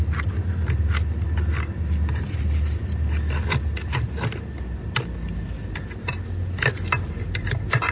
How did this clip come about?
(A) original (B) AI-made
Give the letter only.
A